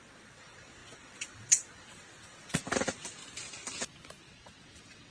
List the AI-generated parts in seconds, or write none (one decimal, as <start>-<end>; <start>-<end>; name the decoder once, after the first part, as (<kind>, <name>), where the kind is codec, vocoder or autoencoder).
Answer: 0.0-2.6 (vocoder, WaveNeXt); 4.2-5.1